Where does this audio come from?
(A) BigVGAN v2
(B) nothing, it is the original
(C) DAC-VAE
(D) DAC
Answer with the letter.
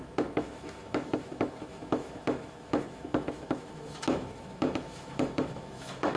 C